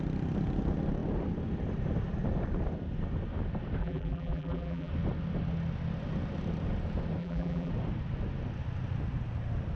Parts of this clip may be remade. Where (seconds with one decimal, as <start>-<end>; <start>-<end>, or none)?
3.8-4.9; 7.2-7.7